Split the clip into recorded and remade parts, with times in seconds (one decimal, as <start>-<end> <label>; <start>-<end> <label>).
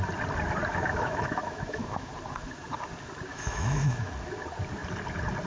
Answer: 0.0-0.7 recorded; 0.7-2.1 remade; 2.1-3.3 recorded; 3.3-4.1 remade; 4.1-5.5 recorded